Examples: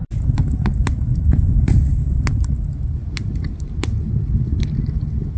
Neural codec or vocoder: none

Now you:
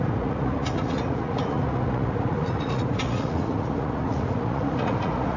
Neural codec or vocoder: vocoder, Vocos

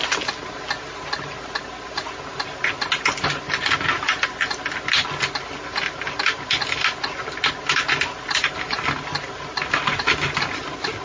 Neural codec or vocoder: none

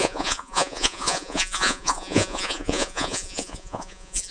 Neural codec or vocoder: vocoder, Vocos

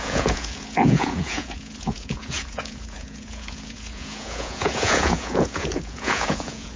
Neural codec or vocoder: vocoder, Vocos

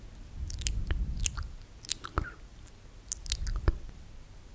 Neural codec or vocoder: none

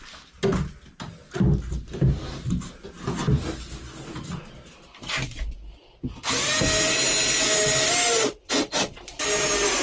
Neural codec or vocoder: none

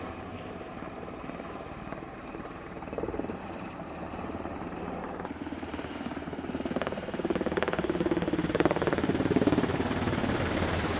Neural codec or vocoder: vocoder, BigVGAN v2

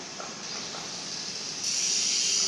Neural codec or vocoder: none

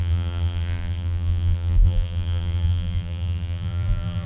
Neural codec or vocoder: vocoder, BigVGAN v2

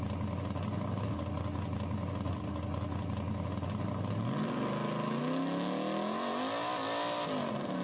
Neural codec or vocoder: none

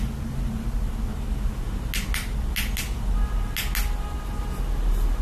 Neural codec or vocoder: none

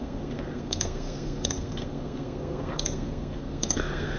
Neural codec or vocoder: codec, SNAC